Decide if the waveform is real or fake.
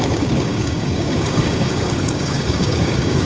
fake